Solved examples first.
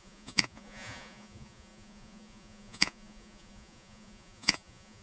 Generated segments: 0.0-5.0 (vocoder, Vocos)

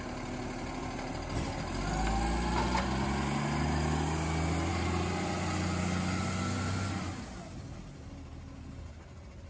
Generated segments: none